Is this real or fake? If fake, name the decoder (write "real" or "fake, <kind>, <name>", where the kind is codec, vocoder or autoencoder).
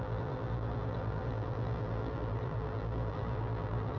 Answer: fake, vocoder, BigVGAN v2